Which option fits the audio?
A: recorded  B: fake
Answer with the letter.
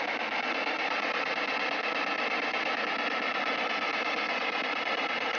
A